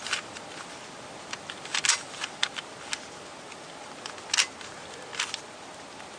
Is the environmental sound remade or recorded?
recorded